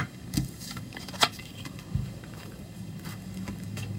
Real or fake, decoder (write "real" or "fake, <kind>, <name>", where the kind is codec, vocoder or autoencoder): fake, codec, DAC